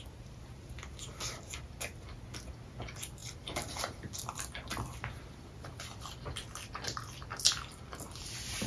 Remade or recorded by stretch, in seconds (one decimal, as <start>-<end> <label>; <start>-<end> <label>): 0.0-3.2 recorded; 3.2-4.3 remade; 4.3-8.7 recorded